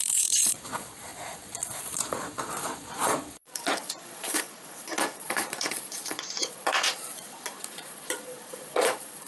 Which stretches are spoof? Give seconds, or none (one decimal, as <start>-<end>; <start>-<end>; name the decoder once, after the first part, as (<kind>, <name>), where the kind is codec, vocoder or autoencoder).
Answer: 0.0-9.3 (vocoder, Vocos)